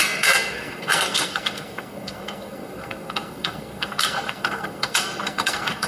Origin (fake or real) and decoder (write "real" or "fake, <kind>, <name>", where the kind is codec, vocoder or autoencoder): fake, codec, SNAC